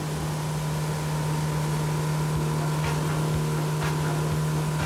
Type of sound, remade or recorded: recorded